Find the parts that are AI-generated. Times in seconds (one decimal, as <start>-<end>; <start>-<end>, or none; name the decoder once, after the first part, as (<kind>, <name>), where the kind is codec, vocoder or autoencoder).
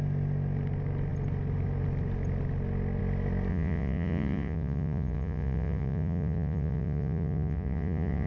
3.5-8.3 (vocoder, Vocos)